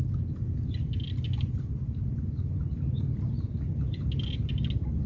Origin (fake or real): real